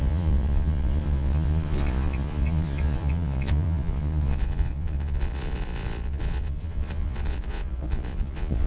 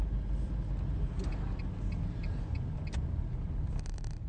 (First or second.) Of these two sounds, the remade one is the first